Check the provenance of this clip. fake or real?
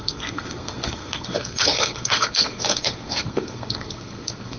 fake